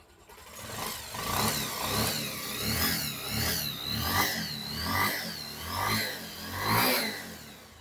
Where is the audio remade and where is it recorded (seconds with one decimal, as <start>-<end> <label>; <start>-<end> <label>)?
0.0-7.8 recorded